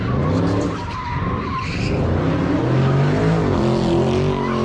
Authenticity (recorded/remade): recorded